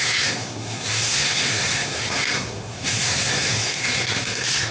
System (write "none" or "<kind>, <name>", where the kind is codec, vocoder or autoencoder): codec, SNAC